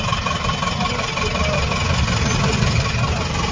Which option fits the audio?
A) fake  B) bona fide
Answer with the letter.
B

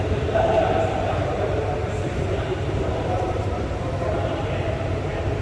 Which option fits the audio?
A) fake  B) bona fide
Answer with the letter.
A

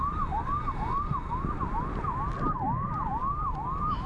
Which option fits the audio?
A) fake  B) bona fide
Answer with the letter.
B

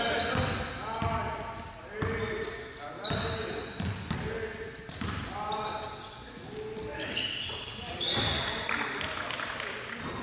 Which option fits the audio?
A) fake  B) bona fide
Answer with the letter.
B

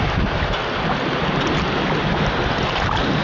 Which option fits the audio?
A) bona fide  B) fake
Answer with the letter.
A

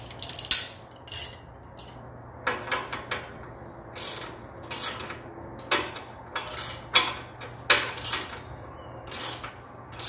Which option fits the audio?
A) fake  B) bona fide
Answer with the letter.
B